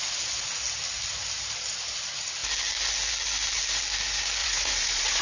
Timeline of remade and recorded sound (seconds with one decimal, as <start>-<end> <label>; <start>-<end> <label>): 0.0-4.4 recorded; 4.4-5.2 remade